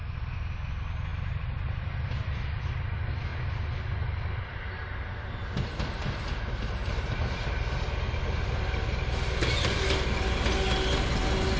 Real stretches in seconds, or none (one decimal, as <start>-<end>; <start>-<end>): 0.0-1.1; 2.7-6.8; 7.6-11.6